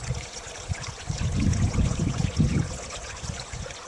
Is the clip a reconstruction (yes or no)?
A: yes